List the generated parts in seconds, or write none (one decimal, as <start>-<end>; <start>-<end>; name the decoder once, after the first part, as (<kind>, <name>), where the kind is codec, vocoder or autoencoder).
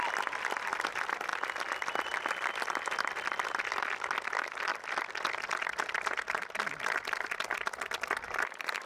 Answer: none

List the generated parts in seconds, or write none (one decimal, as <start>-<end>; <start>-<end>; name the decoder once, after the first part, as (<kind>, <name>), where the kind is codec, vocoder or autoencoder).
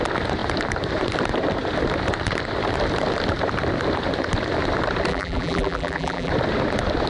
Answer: 5.1-6.3 (vocoder, BigVGAN v2)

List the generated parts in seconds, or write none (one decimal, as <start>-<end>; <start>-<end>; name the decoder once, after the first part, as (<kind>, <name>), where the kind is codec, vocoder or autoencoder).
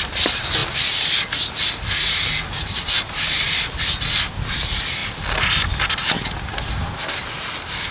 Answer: none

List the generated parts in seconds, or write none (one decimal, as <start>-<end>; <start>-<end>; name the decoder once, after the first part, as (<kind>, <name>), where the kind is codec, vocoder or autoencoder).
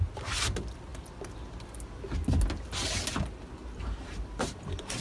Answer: 3.6-5.0 (vocoder, BigVGAN v2)